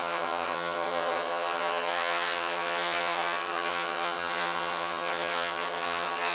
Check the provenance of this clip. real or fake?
fake